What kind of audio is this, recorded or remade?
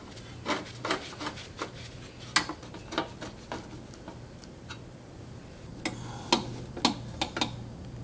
recorded